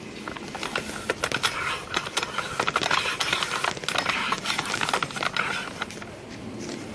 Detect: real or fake real